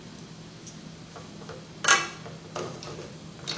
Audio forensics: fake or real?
real